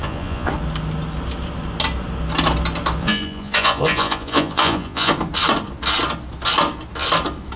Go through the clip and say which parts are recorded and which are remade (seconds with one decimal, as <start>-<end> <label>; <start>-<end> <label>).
0.0-0.5 remade; 0.5-3.0 recorded; 3.0-5.1 remade; 5.1-7.6 recorded